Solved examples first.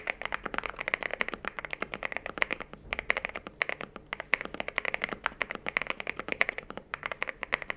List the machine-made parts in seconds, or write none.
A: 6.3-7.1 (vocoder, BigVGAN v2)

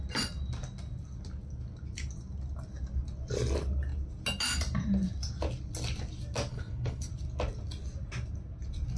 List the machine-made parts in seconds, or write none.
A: 6.5-7.1 (codec, HILCodec)

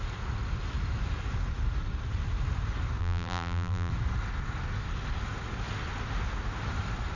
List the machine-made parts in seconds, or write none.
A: 3.0-3.9 (vocoder, BigVGAN v2)